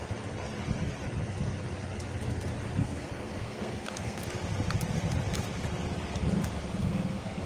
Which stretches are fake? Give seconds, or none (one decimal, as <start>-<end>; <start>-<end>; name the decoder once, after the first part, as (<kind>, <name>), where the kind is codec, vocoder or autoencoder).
2.8-4.2 (codec, SNAC); 6.8-7.5